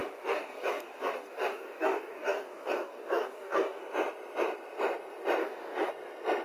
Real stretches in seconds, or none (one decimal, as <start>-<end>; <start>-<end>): 3.8-5.4; 5.9-6.4